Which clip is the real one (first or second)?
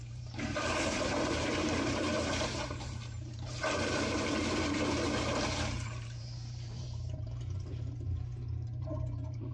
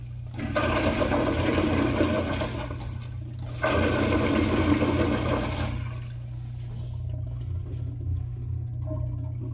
second